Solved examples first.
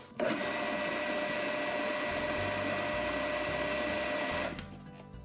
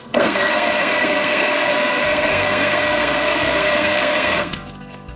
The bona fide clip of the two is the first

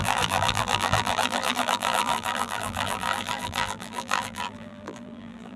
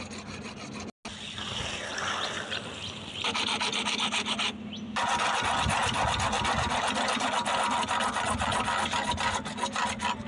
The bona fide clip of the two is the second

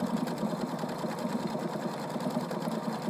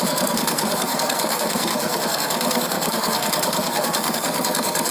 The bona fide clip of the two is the first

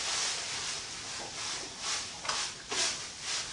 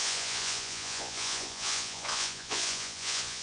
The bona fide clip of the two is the first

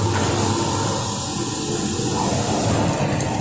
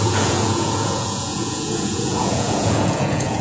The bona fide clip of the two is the first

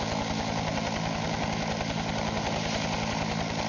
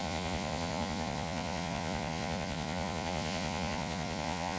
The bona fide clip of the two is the first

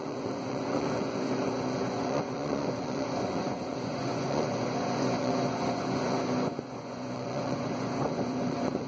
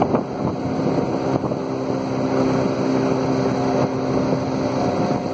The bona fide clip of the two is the second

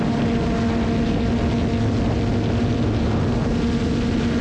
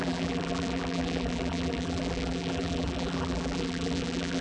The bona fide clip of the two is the first